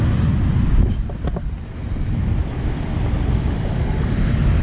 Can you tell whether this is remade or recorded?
recorded